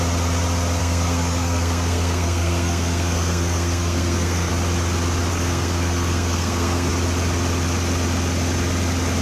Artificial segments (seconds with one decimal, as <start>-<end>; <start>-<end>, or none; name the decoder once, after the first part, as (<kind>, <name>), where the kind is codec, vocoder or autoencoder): 0.8-4.5 (codec, SNAC); 5.3-6.9